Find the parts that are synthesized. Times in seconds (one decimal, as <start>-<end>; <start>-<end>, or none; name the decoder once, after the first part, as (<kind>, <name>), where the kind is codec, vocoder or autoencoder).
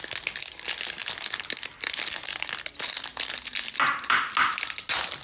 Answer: none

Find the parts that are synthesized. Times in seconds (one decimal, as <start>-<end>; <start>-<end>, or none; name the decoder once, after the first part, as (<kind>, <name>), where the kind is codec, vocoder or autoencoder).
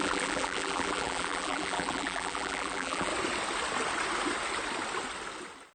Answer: 0.0-3.1 (vocoder, BigVGAN v2)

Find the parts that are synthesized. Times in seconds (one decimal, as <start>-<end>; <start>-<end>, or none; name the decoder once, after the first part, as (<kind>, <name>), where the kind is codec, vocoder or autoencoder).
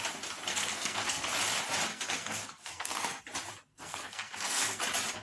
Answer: 0.5-1.4 (codec, SNAC); 1.9-3.2; 3.7-4.8